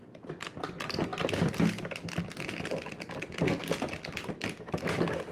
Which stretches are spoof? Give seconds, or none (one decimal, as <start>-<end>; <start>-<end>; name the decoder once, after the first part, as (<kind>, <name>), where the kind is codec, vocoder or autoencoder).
none